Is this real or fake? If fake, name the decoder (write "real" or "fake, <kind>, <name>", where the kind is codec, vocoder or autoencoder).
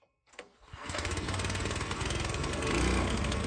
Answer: fake, codec, SNAC